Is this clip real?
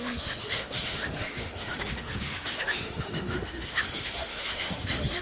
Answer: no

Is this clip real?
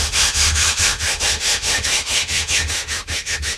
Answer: no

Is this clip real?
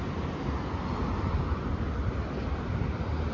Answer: yes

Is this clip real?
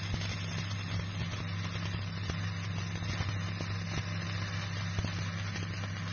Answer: yes